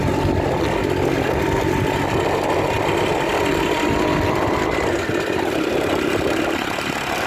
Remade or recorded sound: recorded